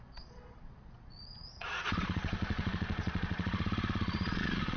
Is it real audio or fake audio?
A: fake